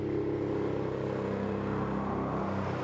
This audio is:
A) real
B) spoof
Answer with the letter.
A